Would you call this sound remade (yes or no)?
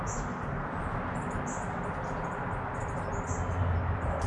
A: no